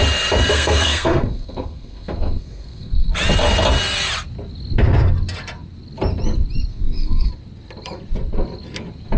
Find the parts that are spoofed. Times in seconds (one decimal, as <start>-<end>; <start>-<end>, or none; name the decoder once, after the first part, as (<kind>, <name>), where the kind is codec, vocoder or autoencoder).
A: 0.5-3.1 (codec, SNAC); 6.7-7.3